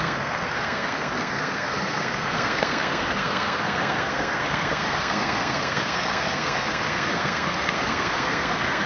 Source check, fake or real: fake